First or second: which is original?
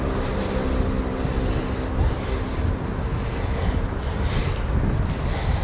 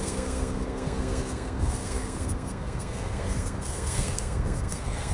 first